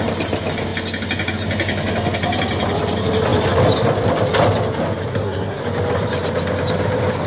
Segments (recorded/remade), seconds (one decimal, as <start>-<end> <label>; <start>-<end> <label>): 0.0-5.1 recorded; 5.1-5.6 remade; 5.6-7.3 recorded

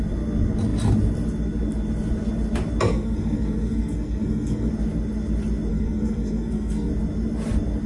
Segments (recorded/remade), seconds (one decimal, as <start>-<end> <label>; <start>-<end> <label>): 0.0-2.9 recorded; 2.9-4.7 remade; 4.7-5.7 recorded; 5.7-6.9 remade; 6.9-7.9 recorded

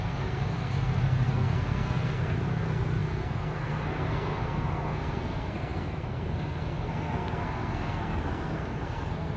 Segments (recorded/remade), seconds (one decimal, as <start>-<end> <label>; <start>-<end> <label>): 0.0-9.4 remade

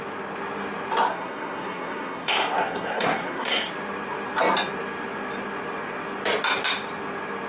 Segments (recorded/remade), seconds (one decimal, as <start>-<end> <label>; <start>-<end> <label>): 0.0-1.1 recorded; 1.1-3.7 remade; 3.7-7.5 recorded

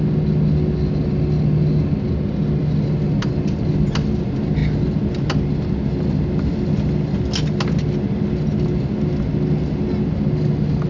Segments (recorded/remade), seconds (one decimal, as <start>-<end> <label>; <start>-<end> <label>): 0.0-10.9 recorded

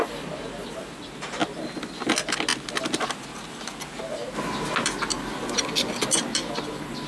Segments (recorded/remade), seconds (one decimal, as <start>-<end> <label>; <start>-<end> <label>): 0.0-7.1 recorded

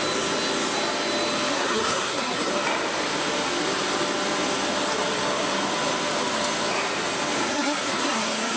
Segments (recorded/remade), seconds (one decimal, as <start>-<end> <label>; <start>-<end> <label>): 0.0-1.5 recorded; 1.5-2.5 remade; 2.5-7.4 recorded; 7.4-8.6 remade

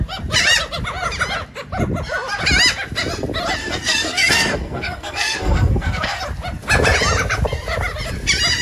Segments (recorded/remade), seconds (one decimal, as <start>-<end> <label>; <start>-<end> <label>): 0.0-3.6 recorded; 3.6-6.2 remade; 6.2-8.6 recorded